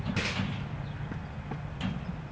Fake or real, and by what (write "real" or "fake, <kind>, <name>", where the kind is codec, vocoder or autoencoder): real